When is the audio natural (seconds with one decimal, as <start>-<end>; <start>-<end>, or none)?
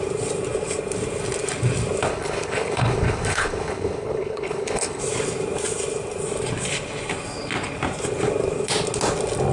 0.0-2.1; 5.0-9.5